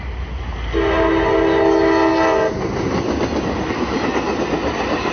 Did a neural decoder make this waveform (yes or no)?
no